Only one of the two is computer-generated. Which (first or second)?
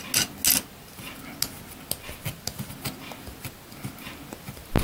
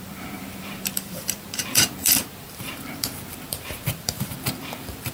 second